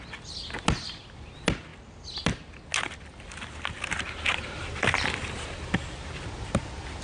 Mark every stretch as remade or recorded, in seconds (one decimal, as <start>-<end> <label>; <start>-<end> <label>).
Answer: 0.0-7.0 recorded